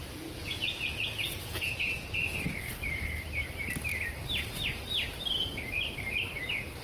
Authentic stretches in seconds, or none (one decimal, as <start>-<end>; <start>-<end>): 2.4-6.8